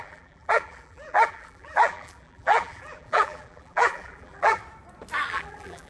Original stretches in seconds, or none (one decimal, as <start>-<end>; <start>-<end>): 4.6-5.3